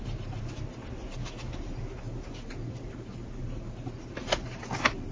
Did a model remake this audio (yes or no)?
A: no